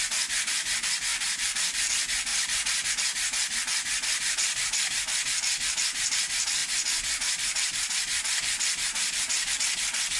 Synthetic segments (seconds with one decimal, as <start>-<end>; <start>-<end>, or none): 1.1-1.9